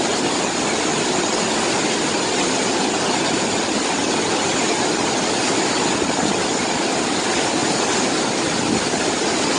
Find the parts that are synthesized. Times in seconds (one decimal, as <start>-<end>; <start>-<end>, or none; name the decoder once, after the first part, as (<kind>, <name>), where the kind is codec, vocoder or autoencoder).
none